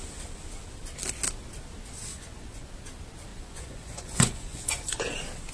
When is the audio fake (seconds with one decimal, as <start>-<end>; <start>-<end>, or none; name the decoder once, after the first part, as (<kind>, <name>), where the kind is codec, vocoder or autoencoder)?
2.1-2.7 (vocoder, Vocos); 3.3-5.1